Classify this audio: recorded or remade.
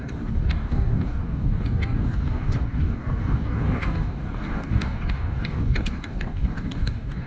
remade